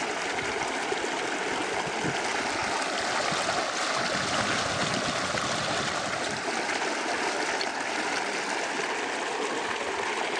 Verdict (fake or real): real